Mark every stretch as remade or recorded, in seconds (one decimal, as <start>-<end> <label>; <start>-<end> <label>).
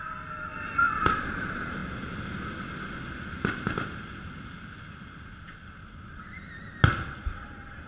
0.0-7.9 recorded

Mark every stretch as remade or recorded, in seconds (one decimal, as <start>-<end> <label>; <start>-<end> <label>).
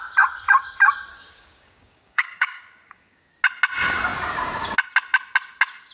0.0-1.1 recorded; 1.1-3.3 remade; 3.3-5.9 recorded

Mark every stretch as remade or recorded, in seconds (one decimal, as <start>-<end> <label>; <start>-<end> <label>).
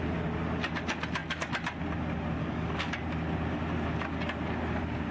0.0-2.4 recorded; 2.4-2.9 remade; 2.9-5.1 recorded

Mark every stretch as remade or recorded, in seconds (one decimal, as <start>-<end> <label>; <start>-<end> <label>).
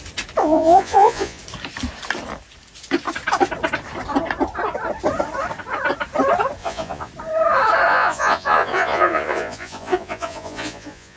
0.0-0.4 recorded; 0.4-1.4 remade; 1.4-6.6 recorded; 6.6-7.1 remade; 7.1-7.9 recorded; 7.9-11.2 remade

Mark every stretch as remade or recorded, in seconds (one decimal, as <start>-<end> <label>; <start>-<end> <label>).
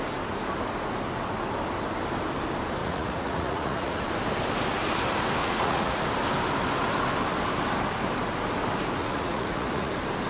0.0-2.8 recorded; 2.8-4.1 remade; 4.1-5.4 recorded; 5.4-6.0 remade; 6.0-9.0 recorded; 9.0-9.9 remade; 9.9-10.3 recorded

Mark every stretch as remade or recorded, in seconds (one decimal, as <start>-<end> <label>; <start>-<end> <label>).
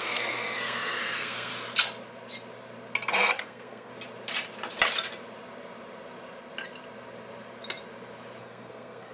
0.0-1.5 remade; 1.5-3.4 recorded; 3.4-3.9 remade; 3.9-8.4 recorded; 8.4-9.1 remade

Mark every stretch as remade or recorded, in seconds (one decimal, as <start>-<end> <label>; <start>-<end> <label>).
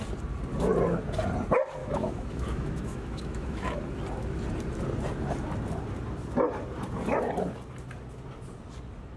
0.0-1.8 recorded; 1.8-3.8 remade; 3.8-9.2 recorded